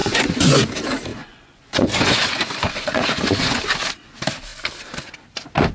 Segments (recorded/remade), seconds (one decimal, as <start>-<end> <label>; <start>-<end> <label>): 0.0-0.7 remade; 0.7-1.1 recorded; 1.1-3.6 remade; 3.6-5.7 recorded

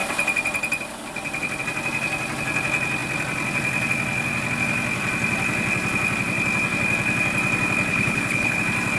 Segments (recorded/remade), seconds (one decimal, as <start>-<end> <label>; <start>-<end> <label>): 0.0-7.9 recorded; 7.9-8.6 remade; 8.6-9.0 recorded